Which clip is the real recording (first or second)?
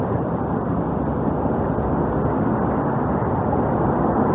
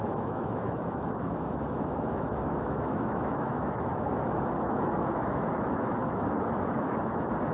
first